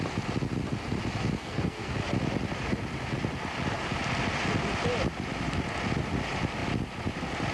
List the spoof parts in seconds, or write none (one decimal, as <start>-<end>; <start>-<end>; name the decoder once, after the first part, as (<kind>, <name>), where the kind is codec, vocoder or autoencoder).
1.4-1.9 (codec, SNAC)